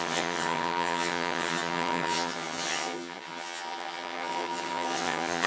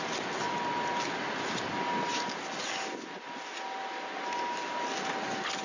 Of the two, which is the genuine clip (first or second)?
second